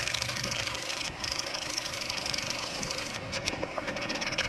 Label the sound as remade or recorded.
remade